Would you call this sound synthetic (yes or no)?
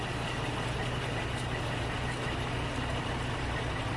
no